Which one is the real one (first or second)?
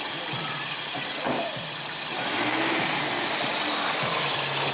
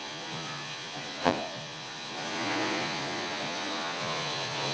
first